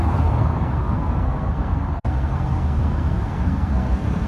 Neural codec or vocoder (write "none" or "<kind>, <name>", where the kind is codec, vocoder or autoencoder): codec, SNAC